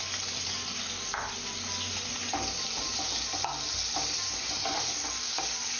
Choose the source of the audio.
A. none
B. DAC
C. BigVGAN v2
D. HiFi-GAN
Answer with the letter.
A